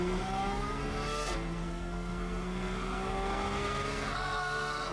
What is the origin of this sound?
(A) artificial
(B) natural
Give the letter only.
A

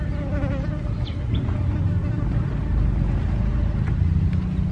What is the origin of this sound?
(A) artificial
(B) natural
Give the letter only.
B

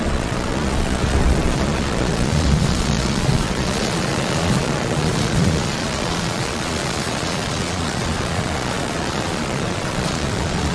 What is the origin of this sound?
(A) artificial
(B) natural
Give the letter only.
A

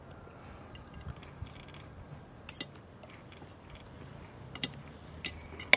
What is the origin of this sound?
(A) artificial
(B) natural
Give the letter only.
B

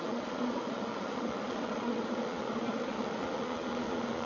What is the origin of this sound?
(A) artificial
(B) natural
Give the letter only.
A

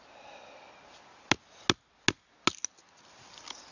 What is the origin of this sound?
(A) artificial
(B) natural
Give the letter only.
B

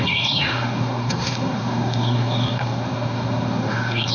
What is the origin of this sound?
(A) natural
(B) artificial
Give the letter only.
B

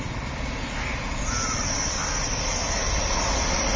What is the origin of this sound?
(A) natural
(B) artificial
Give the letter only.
A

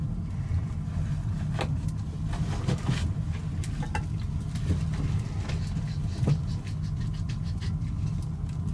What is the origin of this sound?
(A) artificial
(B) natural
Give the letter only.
B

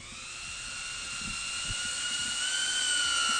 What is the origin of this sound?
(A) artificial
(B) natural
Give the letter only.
B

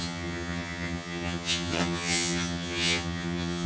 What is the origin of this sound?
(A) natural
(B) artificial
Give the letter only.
B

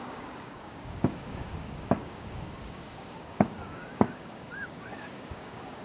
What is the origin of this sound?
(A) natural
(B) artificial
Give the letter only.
B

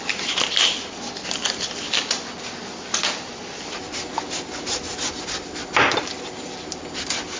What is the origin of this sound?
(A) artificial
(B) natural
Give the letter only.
B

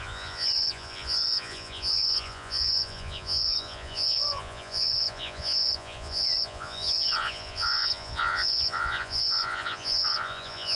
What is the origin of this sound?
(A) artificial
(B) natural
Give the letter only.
A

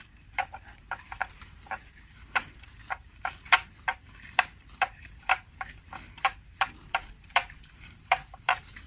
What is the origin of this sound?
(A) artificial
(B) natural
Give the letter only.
A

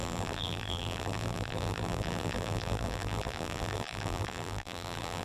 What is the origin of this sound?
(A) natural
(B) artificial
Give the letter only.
B